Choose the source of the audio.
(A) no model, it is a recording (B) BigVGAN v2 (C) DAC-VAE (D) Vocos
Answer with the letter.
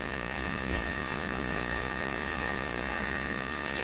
D